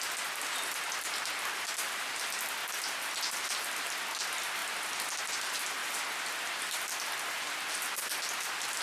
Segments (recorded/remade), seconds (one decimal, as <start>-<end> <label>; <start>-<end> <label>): 0.0-8.8 recorded